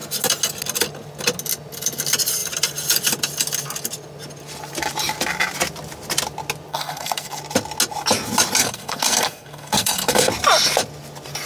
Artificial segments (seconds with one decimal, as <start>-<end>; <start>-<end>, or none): 6.7-7.4; 8.6-10.3